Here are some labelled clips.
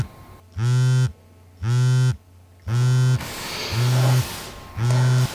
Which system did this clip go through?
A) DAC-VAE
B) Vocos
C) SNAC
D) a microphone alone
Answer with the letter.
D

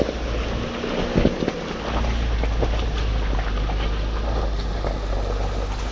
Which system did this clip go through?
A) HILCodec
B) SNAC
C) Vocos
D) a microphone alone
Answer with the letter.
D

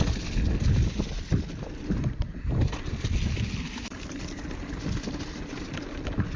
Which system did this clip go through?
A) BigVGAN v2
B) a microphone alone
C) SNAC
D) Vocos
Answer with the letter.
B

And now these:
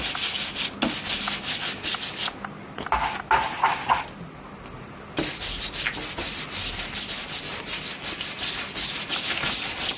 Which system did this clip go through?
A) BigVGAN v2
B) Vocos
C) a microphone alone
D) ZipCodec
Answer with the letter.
C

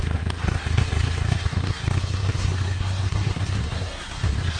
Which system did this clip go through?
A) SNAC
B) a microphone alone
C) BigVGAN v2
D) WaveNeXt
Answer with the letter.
A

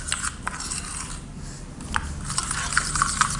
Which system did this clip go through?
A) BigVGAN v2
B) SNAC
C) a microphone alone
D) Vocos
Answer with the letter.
C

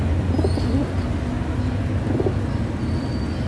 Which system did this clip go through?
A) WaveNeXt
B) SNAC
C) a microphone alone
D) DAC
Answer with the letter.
C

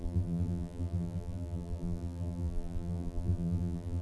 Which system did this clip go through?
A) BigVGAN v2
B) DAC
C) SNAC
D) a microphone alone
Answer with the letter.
A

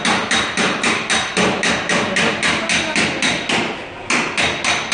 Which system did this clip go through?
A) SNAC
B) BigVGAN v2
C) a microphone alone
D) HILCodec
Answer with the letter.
C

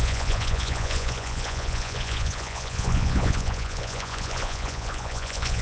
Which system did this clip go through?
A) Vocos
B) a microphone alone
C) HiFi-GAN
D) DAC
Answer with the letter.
A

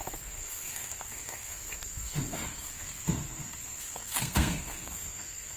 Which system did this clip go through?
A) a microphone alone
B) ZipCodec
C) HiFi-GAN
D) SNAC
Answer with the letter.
D